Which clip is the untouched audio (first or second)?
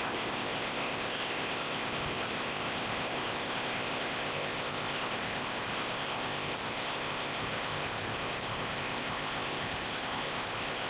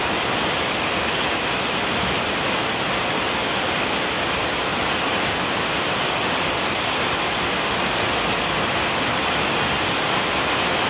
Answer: second